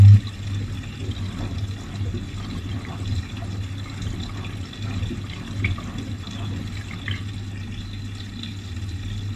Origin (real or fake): real